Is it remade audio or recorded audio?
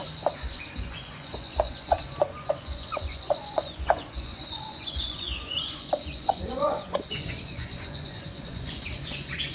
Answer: remade